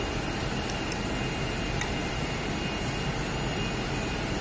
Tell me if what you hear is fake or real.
real